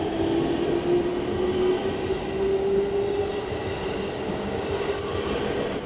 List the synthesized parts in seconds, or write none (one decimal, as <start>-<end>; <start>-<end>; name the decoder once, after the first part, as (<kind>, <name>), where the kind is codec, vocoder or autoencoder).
none